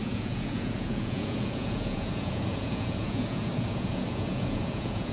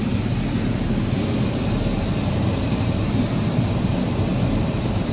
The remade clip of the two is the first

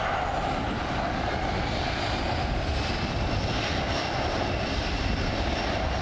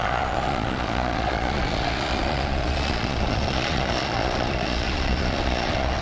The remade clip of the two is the second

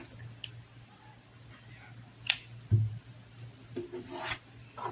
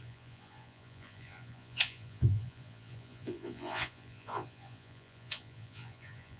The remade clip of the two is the second